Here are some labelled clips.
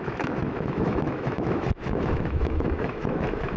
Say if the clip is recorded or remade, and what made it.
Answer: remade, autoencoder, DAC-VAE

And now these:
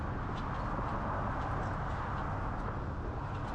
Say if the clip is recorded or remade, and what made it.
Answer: recorded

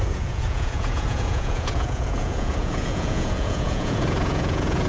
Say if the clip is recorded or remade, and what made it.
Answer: remade, vocoder, Vocos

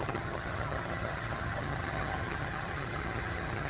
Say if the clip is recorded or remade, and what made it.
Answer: remade, vocoder, HiFi-GAN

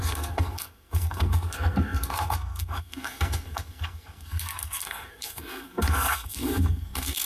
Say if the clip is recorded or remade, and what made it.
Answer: remade, codec, SNAC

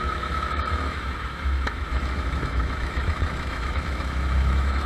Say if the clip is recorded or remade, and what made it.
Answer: remade, autoencoder, DAC-VAE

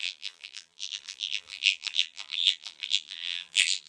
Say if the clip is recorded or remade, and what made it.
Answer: remade, vocoder, BigVGAN v2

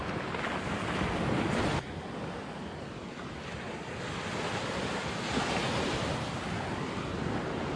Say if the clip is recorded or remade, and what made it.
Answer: recorded